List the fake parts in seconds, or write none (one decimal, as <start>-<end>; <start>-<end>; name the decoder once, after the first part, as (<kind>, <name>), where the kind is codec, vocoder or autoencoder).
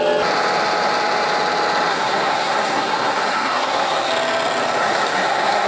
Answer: 1.9-4.1 (codec, SNAC); 4.8-5.7